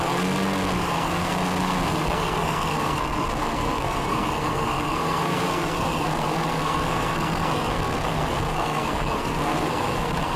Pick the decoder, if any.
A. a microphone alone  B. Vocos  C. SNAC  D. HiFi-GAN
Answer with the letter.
C